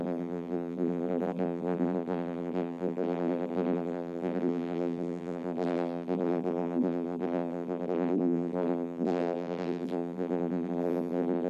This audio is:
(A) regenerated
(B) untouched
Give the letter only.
A